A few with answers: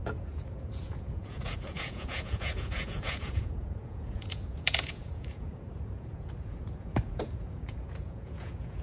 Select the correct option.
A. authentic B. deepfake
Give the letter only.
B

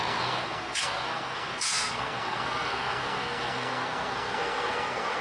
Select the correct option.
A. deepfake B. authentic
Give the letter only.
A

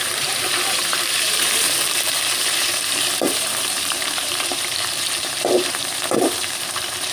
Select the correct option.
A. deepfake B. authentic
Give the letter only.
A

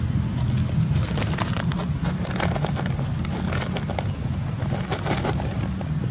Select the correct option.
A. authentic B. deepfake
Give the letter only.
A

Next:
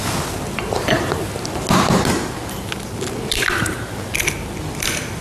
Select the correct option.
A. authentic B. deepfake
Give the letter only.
A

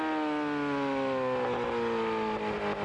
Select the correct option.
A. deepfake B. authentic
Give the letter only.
B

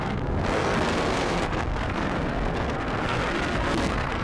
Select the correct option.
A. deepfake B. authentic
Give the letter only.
A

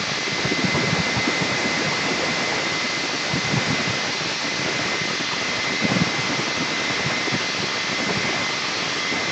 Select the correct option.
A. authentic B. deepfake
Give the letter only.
A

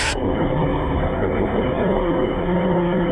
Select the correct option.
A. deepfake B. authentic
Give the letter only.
A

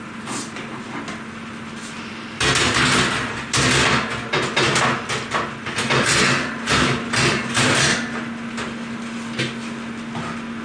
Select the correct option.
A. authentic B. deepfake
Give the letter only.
A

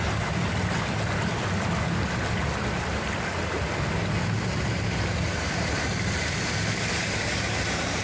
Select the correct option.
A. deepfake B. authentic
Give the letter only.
B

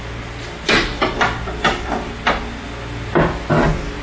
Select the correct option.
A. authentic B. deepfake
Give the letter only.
A